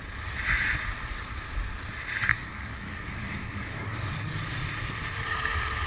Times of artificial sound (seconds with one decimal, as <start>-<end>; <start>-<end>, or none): 2.3-4.4